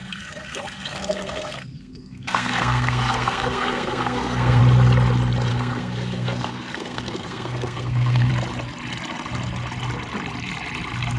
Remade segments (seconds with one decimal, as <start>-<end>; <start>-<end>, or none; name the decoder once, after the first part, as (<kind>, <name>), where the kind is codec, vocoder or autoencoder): 0.0-4.6 (codec, SNAC); 5.5-8.3